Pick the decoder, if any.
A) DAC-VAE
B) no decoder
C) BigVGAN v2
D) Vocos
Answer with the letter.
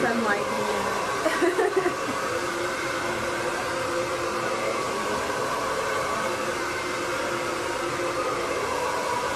C